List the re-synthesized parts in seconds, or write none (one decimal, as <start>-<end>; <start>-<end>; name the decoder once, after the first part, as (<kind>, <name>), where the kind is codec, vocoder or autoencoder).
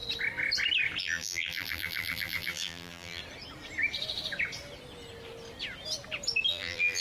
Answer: 1.0-3.2 (vocoder, BigVGAN v2); 6.5-7.0